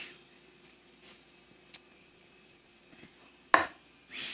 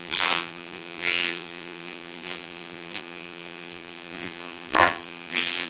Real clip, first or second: first